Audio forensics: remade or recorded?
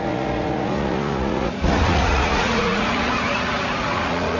remade